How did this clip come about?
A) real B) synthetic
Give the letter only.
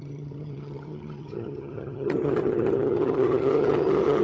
B